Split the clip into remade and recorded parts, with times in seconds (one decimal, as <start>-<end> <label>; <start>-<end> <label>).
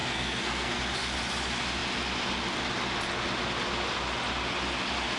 0.0-0.8 remade; 0.8-5.2 recorded